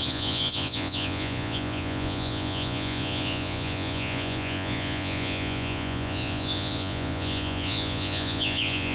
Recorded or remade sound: remade